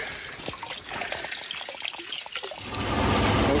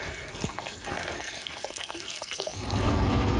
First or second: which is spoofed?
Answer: second